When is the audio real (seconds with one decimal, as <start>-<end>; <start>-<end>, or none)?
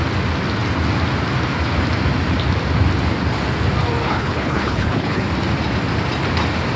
0.0-4.0; 5.2-6.8